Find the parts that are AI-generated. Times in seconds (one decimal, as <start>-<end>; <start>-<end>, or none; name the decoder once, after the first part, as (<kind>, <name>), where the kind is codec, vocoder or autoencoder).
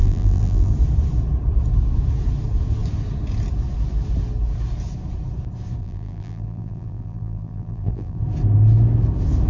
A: 0.0-0.7 (vocoder, BigVGAN v2); 5.8-8.2